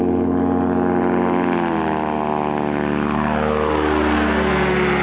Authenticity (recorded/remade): recorded